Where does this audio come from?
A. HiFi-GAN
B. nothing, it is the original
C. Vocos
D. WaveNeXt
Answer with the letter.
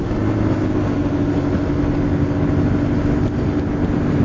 B